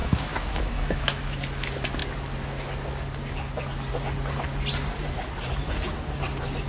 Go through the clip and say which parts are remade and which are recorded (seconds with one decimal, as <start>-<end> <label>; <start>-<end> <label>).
0.0-1.4 remade; 1.4-6.7 recorded